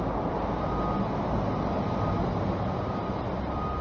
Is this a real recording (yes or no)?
yes